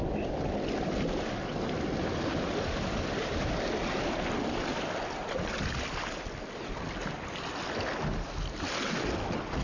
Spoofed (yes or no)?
no